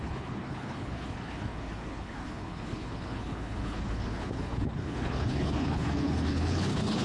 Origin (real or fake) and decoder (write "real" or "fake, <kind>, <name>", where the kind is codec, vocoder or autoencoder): fake, codec, HILCodec